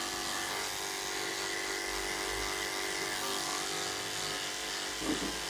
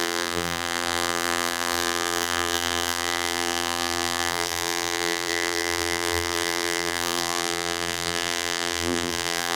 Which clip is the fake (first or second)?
second